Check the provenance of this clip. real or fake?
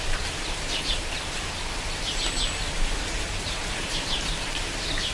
fake